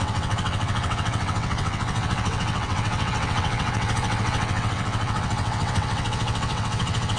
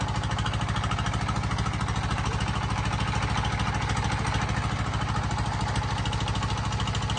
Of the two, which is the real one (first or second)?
second